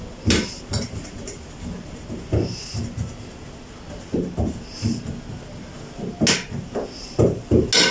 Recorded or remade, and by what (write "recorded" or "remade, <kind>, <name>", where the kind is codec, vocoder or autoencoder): recorded